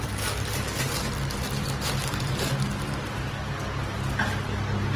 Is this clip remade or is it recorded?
recorded